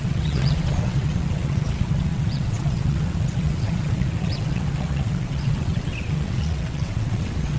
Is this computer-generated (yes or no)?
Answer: yes